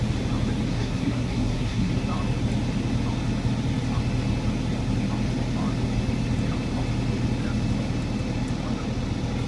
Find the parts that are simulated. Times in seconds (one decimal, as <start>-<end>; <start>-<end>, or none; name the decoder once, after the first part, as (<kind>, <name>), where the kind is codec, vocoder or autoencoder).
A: 0.7-1.9 (codec, SNAC)

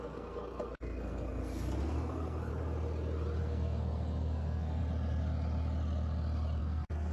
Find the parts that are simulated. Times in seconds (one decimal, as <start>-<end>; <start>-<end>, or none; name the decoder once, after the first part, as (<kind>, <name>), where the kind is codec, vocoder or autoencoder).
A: 0.0-2.5 (codec, SNAC); 3.4-4.8; 6.6-7.1